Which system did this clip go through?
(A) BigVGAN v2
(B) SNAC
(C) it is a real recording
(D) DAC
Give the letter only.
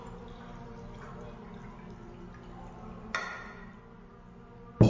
C